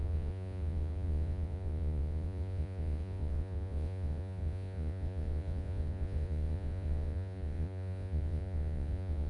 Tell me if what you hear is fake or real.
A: fake